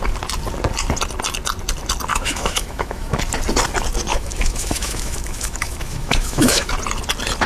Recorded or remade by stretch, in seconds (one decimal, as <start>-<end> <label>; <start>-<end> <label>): 0.0-2.1 recorded; 2.1-3.2 remade; 3.2-4.1 recorded; 4.1-6.7 remade; 6.7-7.5 recorded